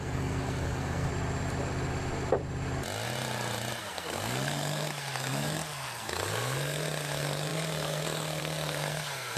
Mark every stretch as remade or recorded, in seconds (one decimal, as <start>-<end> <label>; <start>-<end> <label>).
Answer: 0.0-1.1 remade; 1.1-3.8 recorded; 3.8-9.4 remade